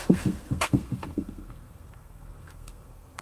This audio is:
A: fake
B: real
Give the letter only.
A